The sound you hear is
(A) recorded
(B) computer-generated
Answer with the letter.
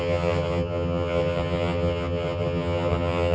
B